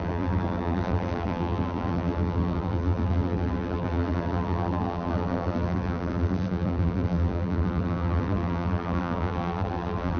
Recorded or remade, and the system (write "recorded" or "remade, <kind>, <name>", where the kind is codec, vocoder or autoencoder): remade, vocoder, BigVGAN v2